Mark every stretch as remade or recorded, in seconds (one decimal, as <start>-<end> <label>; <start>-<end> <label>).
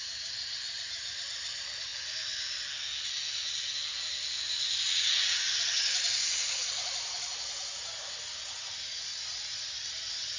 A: 0.0-10.4 recorded